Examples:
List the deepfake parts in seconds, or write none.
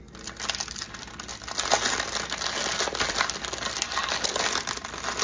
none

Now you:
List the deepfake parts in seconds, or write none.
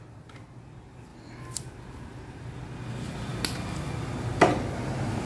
1.1-2.6 (vocoder, BigVGAN v2)